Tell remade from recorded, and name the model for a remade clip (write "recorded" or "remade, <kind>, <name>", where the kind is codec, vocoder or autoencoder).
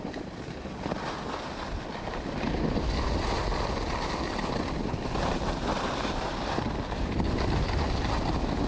recorded